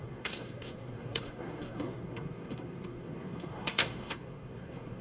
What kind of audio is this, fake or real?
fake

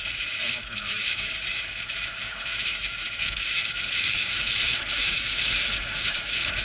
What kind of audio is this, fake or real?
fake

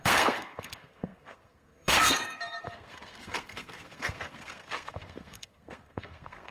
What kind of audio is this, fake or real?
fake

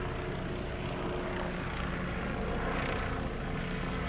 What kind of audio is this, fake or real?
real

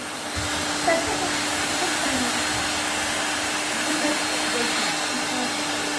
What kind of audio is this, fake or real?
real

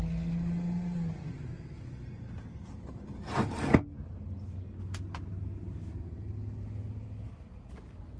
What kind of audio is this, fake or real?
real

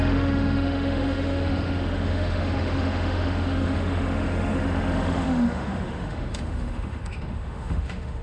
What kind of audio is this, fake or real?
fake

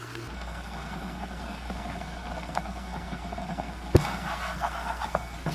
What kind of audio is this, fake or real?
fake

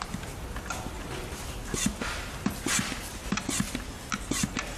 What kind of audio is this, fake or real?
real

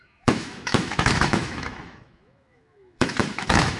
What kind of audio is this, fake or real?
fake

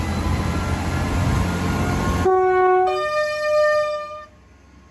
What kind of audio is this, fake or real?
real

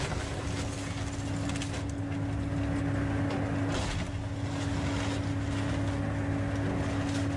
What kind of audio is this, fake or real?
real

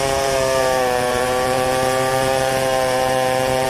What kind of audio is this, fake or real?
fake